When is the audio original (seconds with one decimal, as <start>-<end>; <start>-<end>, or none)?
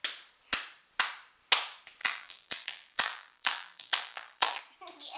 0.0-2.0; 4.6-5.2